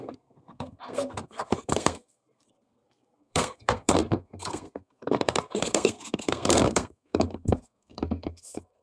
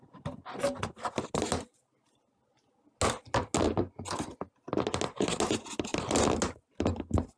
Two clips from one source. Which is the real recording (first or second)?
second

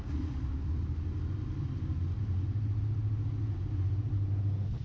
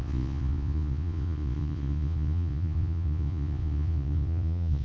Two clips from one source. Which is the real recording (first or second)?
first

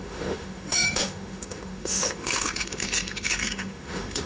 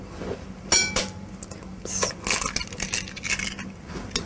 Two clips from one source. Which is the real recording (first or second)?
second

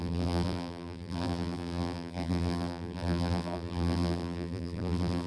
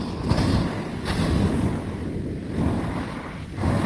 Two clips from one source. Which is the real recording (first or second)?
second